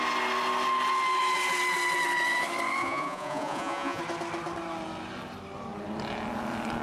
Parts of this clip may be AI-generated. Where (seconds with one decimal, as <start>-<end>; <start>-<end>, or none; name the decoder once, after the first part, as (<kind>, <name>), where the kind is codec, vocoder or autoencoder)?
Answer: 2.8-4.0 (vocoder, Vocos)